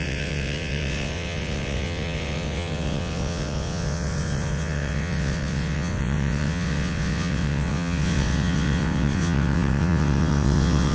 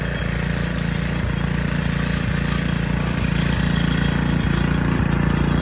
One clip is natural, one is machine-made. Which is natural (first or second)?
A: second